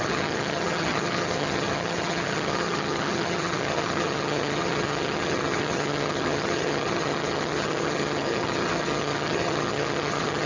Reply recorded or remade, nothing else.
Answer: remade